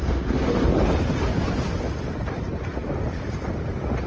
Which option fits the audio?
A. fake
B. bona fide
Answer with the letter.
B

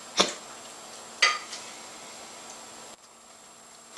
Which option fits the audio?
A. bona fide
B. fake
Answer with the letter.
A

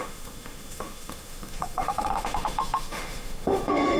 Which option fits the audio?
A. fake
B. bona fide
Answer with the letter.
A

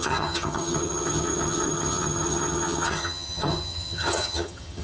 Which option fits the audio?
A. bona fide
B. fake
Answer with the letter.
B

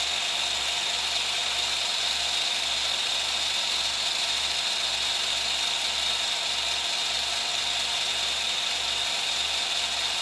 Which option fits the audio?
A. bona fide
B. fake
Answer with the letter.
A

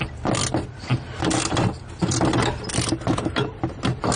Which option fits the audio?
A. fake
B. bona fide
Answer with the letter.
B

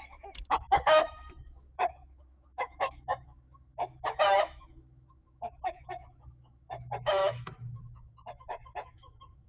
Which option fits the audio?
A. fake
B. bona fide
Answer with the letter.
A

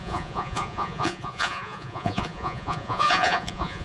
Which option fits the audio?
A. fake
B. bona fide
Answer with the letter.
A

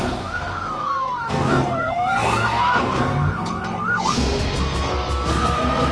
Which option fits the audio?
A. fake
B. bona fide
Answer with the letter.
A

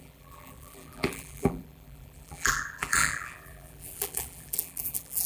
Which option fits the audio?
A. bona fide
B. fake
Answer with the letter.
B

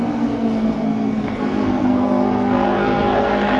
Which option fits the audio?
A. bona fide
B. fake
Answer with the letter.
B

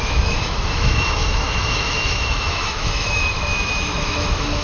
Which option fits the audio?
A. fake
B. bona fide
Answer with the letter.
A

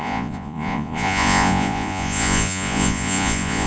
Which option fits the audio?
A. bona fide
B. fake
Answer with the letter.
B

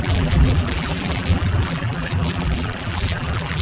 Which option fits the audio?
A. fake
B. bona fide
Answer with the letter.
A